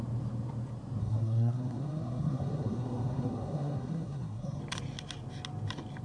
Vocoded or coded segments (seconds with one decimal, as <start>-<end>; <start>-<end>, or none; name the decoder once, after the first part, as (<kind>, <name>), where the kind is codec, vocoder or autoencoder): 1.0-4.6 (codec, SNAC)